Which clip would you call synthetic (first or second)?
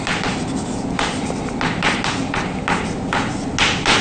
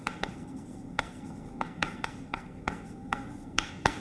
second